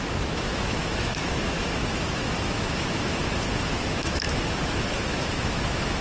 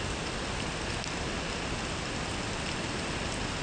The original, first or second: second